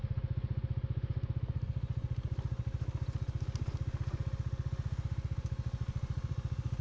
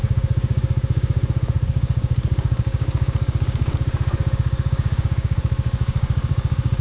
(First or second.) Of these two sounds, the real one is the first